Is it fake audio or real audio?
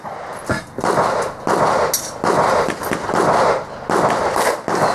real